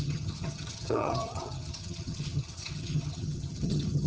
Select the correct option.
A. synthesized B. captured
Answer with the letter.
A